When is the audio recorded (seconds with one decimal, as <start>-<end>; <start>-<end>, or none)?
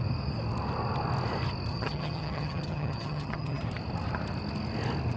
0.0-1.7; 3.6-5.2